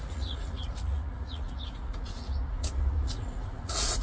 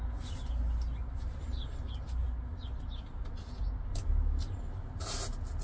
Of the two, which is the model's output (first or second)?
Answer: first